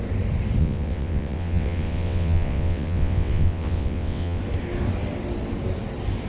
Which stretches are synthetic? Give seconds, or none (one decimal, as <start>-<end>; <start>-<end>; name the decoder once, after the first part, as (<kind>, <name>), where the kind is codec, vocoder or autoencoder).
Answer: 0.6-4.4 (vocoder, WaveNeXt)